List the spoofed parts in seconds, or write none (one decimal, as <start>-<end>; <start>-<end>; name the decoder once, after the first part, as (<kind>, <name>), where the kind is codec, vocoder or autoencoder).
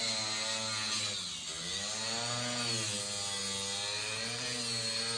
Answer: none